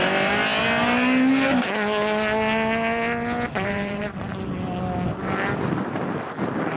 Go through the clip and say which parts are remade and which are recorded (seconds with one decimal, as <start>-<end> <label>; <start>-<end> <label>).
0.0-3.5 recorded; 3.5-4.2 remade; 4.2-6.8 recorded

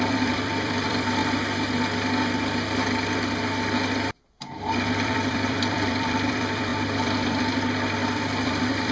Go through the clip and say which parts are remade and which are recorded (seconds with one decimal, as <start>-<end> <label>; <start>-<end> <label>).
0.0-1.2 remade; 1.2-4.4 recorded; 4.4-8.9 remade